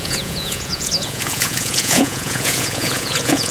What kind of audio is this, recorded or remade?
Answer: remade